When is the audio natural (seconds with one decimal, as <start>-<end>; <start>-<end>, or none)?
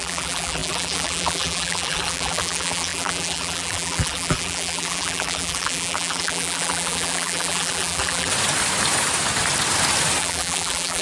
8.3-10.2